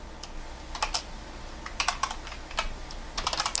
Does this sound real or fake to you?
real